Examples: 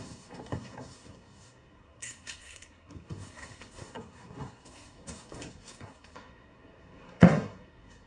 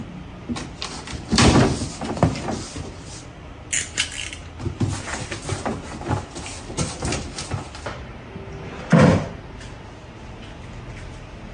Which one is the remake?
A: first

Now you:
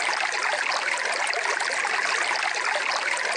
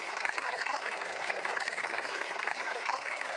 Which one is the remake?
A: second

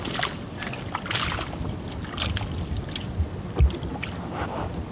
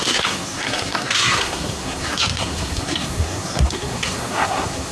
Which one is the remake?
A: second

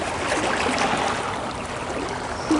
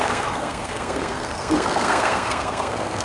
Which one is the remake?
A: second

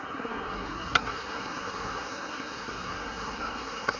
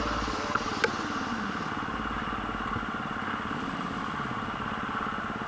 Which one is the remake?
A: first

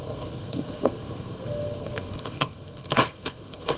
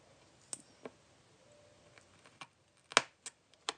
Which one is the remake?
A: first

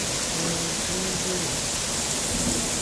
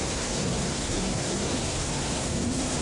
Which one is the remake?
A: second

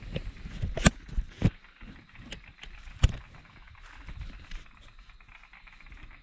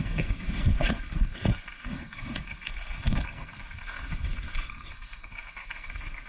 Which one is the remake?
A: second